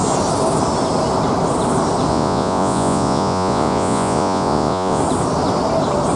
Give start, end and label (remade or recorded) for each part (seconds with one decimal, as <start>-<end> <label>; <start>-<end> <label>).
0.0-2.1 recorded; 2.1-5.0 remade; 5.0-6.2 recorded